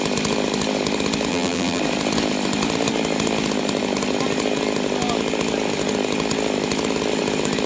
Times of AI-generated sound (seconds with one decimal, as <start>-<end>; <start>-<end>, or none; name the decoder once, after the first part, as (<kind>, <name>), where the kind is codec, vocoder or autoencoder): 1.3-1.8 (vocoder, BigVGAN v2)